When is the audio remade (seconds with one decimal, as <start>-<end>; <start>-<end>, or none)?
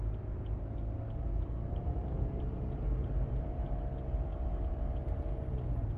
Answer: 1.6-3.5